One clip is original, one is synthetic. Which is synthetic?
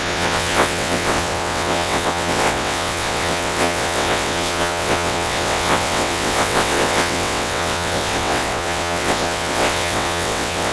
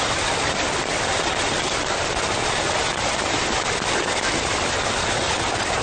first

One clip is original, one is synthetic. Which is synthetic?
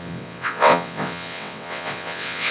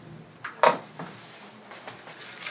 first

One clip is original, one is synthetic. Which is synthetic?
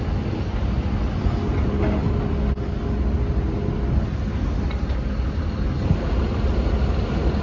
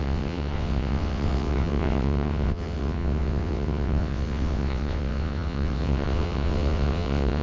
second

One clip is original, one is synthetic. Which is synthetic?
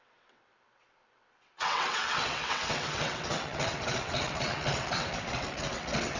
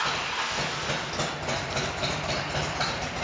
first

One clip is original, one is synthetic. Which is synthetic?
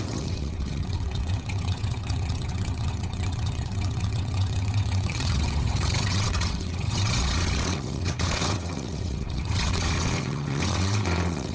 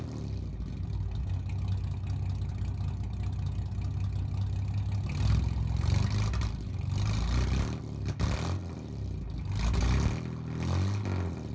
first